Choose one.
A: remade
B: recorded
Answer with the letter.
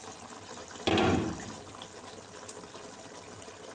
B